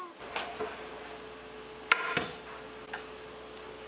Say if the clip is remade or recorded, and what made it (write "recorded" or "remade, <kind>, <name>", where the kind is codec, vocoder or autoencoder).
recorded